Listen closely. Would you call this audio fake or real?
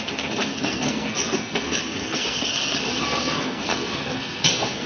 fake